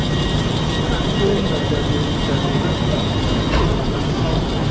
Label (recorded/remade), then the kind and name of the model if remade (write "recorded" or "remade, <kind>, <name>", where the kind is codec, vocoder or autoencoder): recorded